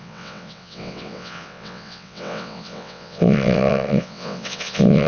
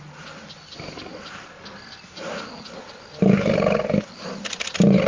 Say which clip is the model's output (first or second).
first